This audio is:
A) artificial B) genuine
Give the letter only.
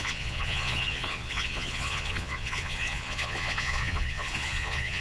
A